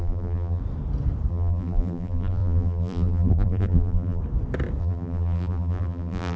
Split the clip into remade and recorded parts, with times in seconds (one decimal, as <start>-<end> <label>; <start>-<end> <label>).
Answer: 0.0-0.6 remade; 0.6-1.3 recorded; 1.3-4.2 remade; 4.2-4.8 recorded; 4.8-6.4 remade